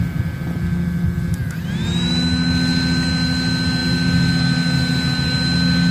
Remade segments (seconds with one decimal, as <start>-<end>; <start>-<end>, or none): none